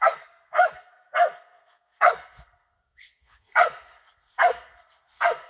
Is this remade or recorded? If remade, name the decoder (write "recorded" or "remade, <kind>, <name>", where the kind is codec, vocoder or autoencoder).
remade, codec, SNAC